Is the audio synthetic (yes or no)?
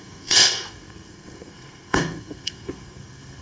yes